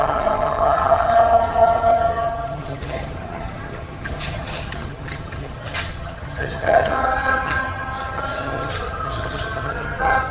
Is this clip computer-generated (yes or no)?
yes